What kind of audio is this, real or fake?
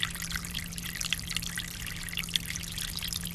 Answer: real